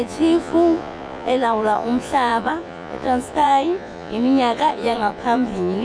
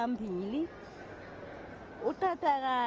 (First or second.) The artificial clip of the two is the first